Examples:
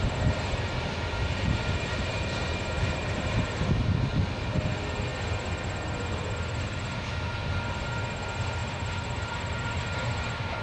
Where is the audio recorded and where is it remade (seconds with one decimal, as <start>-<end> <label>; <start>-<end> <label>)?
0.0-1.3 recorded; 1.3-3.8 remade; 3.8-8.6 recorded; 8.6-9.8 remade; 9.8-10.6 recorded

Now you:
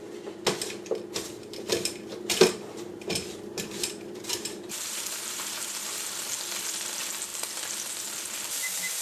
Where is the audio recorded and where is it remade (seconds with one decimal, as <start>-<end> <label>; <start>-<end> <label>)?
0.0-1.4 recorded; 1.4-6.3 remade; 6.3-9.0 recorded

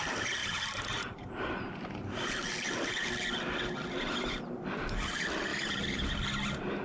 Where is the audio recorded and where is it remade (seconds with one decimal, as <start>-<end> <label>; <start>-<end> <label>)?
0.0-0.4 recorded; 0.4-4.4 remade; 4.4-5.5 recorded; 5.5-6.1 remade; 6.1-6.8 recorded

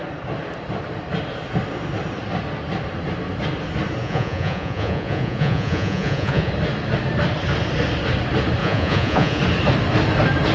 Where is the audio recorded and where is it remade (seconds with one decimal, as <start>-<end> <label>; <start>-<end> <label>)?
0.0-4.0 recorded; 4.0-6.5 remade; 6.5-8.6 recorded; 8.6-9.4 remade; 9.4-10.5 recorded

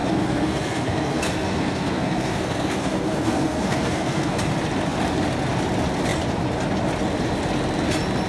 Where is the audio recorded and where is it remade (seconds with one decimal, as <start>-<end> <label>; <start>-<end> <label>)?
0.0-4.4 remade; 4.4-8.3 recorded

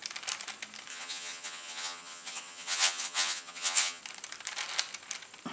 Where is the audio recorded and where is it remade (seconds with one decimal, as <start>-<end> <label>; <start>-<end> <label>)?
0.0-0.9 recorded; 0.9-4.0 remade; 4.0-5.5 recorded

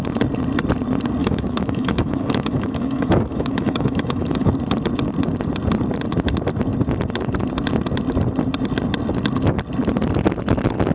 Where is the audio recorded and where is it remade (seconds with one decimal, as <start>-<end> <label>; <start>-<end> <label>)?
0.0-1.2 recorded; 1.2-4.5 remade; 4.5-10.9 recorded

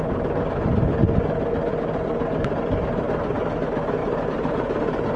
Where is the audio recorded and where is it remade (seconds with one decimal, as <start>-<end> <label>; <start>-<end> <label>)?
0.0-4.0 recorded; 4.0-4.8 remade; 4.8-5.2 recorded